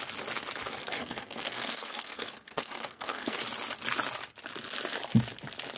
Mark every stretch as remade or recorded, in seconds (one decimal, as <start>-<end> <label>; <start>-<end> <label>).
0.0-0.8 recorded; 0.8-3.4 remade; 3.4-5.8 recorded